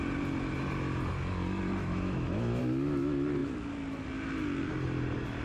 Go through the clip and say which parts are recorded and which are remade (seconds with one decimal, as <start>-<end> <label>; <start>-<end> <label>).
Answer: 0.0-1.8 recorded; 1.8-2.6 remade; 2.6-5.4 recorded